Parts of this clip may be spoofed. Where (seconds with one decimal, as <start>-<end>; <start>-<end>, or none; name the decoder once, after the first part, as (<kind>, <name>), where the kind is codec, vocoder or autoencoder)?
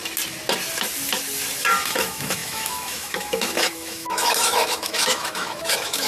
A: 1.6-6.1 (autoencoder, DAC-VAE)